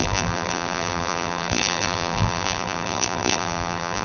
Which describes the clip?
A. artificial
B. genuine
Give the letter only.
A